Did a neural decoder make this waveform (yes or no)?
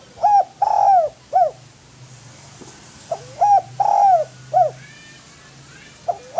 no